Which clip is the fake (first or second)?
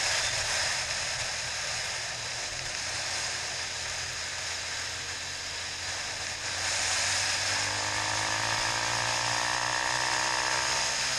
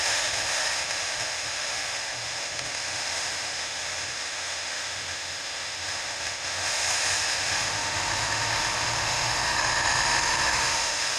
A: second